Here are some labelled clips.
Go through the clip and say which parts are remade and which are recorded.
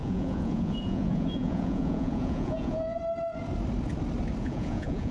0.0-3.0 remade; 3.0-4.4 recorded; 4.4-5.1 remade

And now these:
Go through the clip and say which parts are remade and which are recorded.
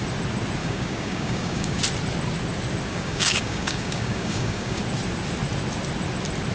0.0-0.6 recorded; 0.6-1.8 remade; 1.8-2.9 recorded; 2.9-4.8 remade; 4.8-6.5 recorded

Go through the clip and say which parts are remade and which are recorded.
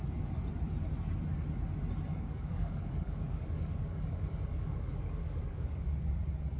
0.0-2.1 recorded; 2.1-6.1 remade; 6.1-6.6 recorded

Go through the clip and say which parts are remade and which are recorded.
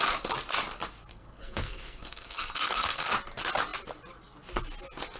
0.0-1.1 recorded; 1.1-3.1 remade; 3.1-5.2 recorded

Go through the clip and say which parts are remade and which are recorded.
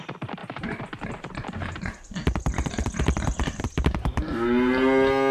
0.0-0.4 recorded; 0.4-3.6 remade; 3.6-5.3 recorded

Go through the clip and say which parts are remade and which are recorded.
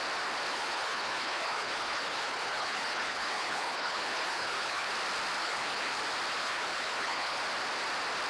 0.0-0.5 recorded; 0.5-4.9 remade; 4.9-5.4 recorded; 5.4-6.0 remade; 6.0-6.4 recorded; 6.4-7.4 remade; 7.4-8.3 recorded